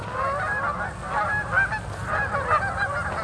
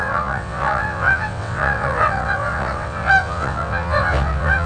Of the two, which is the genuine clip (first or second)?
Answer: first